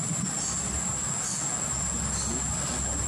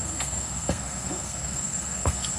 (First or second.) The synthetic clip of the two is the second